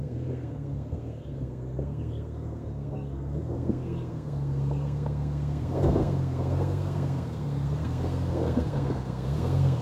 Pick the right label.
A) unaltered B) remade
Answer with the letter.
B